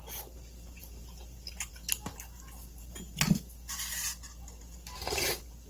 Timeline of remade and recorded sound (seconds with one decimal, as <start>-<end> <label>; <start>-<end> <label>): 0.0-5.7 recorded